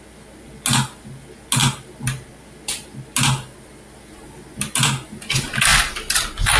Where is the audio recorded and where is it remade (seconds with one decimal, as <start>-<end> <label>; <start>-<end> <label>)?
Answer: 0.0-6.6 recorded